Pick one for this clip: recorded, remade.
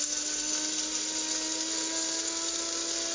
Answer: recorded